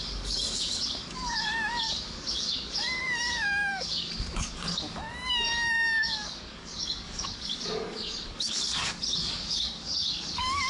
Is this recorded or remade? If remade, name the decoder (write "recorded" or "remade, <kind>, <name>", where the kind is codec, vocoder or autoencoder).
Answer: remade, codec, DAC